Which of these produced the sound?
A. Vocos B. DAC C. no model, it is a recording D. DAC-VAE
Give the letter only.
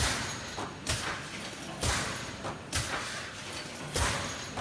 C